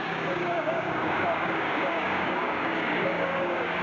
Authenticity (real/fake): fake